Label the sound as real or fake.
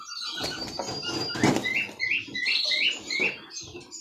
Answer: real